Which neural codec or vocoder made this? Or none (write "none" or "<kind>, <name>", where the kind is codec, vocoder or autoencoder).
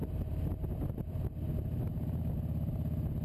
none